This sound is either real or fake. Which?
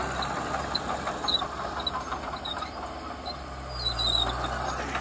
real